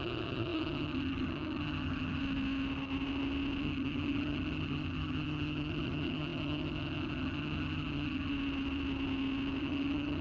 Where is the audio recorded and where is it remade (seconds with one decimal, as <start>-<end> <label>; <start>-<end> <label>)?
0.0-2.2 remade; 2.2-3.6 recorded; 3.6-8.3 remade; 8.3-9.6 recorded; 9.6-10.2 remade